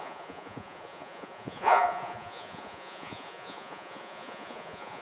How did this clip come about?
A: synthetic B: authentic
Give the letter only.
A